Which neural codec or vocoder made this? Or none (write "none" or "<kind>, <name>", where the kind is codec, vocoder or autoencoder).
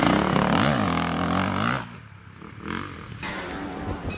none